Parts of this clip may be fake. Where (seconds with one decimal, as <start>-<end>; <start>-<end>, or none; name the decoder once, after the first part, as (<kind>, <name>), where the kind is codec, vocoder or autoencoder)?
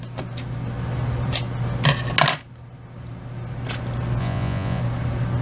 4.2-4.8 (vocoder, Vocos)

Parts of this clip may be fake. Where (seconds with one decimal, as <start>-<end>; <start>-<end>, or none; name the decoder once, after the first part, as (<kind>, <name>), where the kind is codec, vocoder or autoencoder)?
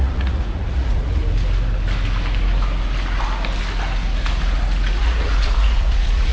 0.0-1.2 (vocoder, Vocos); 5.0-6.3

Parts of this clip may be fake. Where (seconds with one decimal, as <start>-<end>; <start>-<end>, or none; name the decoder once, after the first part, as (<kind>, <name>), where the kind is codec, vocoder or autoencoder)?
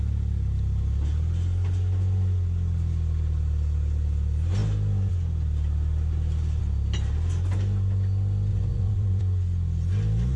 8.5-9.2 (vocoder, Vocos)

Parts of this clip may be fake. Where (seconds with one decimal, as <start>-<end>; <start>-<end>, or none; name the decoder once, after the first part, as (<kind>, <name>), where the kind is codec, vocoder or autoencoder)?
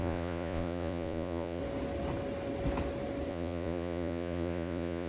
0.0-1.6 (vocoder, Vocos); 3.3-5.1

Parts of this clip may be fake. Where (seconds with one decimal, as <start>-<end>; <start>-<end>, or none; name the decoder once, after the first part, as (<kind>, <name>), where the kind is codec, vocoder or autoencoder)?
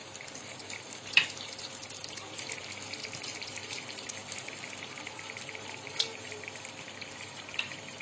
none